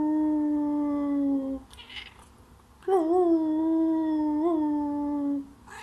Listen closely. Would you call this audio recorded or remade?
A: recorded